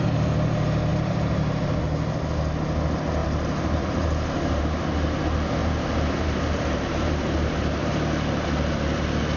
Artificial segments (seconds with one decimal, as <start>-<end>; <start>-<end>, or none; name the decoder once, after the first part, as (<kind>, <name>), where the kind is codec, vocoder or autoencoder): 0.9-1.8 (vocoder, BigVGAN v2); 3.2-4.6; 5.6-7.9